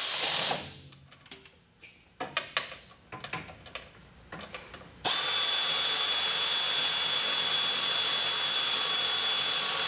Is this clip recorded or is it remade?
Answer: recorded